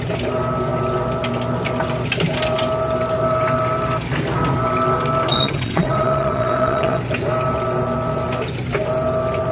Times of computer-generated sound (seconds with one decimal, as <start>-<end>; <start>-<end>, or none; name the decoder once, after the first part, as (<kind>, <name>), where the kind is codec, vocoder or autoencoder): 5.3-7.0 (vocoder, WaveNeXt)